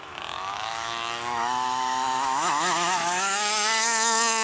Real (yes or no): no